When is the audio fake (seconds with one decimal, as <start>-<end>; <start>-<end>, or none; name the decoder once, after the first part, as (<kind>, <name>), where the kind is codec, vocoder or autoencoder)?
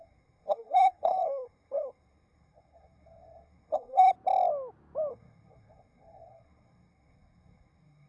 0.0-4.1 (codec, SNAC); 5.1-8.1